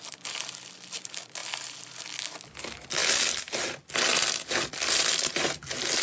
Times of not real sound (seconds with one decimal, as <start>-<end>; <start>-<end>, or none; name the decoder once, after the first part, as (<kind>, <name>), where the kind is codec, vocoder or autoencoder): none